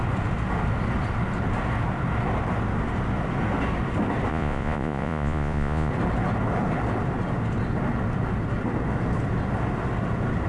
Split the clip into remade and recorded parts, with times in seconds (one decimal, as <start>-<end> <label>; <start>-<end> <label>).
0.0-4.3 recorded; 4.3-5.9 remade; 5.9-10.5 recorded